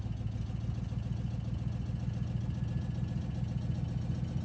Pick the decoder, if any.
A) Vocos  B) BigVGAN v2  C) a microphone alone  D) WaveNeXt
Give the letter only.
C